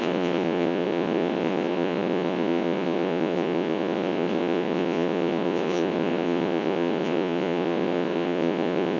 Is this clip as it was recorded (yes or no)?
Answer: no